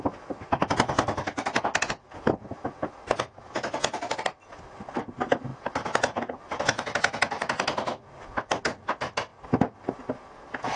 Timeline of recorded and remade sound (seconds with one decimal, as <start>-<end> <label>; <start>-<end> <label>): 0.0-1.7 recorded; 1.7-2.4 remade; 2.4-5.5 recorded; 5.5-8.6 remade; 8.6-10.8 recorded